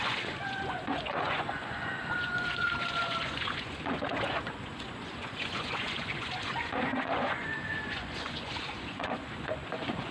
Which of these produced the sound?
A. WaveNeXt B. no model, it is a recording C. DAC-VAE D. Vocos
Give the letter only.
D